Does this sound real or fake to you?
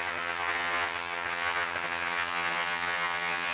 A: fake